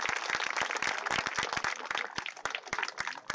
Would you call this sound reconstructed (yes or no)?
no